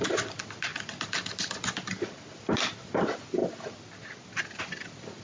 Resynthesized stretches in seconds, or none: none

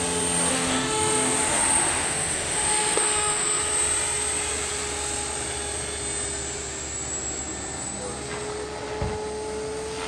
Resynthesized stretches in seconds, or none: 0.5-3.6 (autoencoder, DAC-VAE)

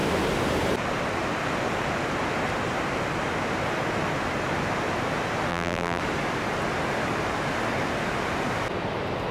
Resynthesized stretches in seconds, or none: 5.5-6.0 (vocoder, BigVGAN v2)

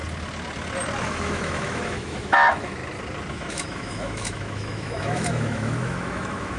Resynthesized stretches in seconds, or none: 1.0-2.8 (autoencoder, DAC-VAE); 3.3-6.6

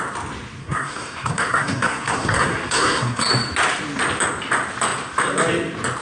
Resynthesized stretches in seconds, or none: 0.6-3.3 (codec, SNAC)